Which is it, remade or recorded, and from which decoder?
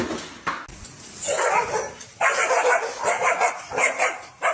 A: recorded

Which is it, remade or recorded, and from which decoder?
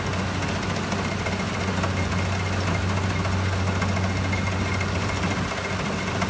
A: recorded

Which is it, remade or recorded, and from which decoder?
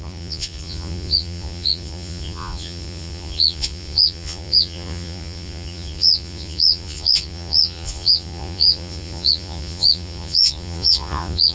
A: remade, vocoder, Vocos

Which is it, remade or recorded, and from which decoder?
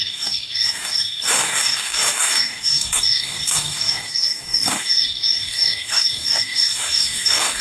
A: remade, codec, DAC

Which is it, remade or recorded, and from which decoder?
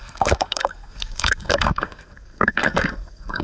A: remade, codec, SNAC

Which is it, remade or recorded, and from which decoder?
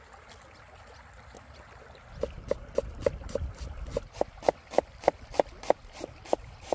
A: recorded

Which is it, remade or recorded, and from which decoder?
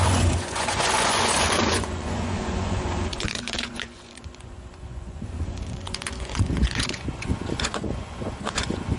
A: remade, vocoder, Vocos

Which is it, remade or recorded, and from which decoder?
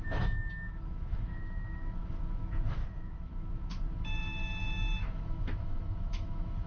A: remade, autoencoder, DAC-VAE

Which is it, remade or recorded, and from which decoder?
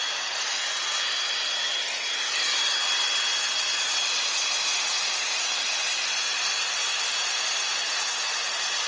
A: recorded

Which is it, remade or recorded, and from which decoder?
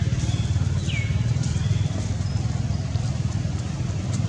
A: recorded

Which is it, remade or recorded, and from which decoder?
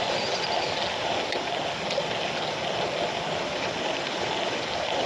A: recorded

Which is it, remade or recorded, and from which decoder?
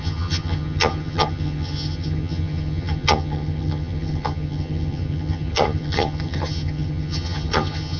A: remade, vocoder, HiFi-GAN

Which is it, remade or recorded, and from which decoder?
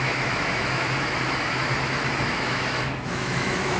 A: remade, autoencoder, DAC-VAE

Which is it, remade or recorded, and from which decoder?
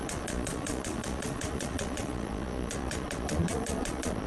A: remade, vocoder, Vocos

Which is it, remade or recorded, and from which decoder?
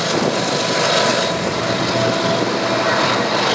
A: recorded